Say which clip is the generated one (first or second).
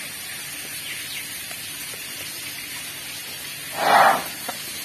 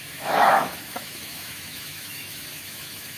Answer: second